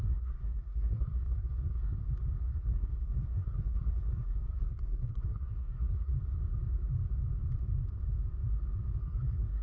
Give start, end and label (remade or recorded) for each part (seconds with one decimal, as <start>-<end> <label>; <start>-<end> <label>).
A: 0.0-2.0 remade; 2.0-2.5 recorded; 2.5-6.1 remade; 6.1-9.0 recorded; 9.0-9.6 remade

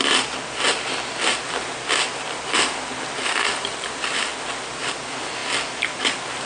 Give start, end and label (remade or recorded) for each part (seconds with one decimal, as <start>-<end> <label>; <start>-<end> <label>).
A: 0.0-6.5 recorded

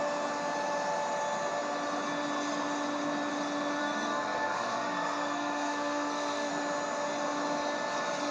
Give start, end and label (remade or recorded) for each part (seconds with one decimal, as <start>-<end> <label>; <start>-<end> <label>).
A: 0.0-3.8 recorded; 3.8-6.5 remade; 6.5-8.3 recorded

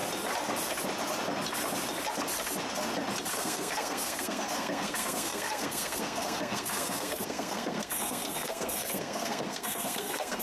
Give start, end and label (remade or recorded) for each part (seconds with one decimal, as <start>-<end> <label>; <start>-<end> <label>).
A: 0.0-3.3 recorded; 3.3-10.4 remade

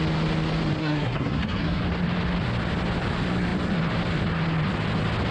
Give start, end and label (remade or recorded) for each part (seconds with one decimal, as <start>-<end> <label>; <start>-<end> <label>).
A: 0.0-0.8 recorded; 0.8-1.8 remade; 1.8-5.3 recorded

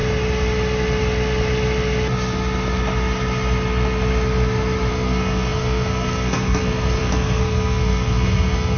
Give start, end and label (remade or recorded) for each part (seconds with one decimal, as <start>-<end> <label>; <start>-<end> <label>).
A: 0.0-4.9 recorded; 4.9-8.8 remade

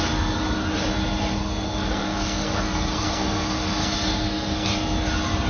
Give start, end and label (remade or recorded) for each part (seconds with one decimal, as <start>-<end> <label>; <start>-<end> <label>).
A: 0.0-1.4 recorded; 1.4-4.7 remade; 4.7-5.5 recorded